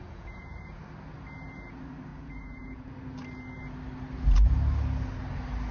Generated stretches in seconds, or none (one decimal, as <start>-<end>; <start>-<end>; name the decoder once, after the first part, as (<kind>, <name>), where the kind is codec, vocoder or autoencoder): 0.0-0.8 (vocoder, Vocos); 2.1-2.9